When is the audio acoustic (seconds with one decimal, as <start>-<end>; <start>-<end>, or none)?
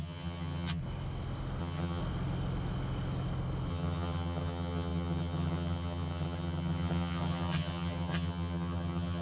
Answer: 0.8-1.6; 2.0-3.7